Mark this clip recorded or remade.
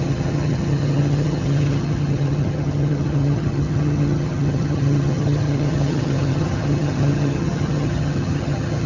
remade